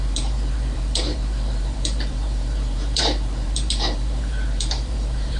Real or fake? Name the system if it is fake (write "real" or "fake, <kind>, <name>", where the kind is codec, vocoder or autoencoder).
fake, vocoder, BigVGAN v2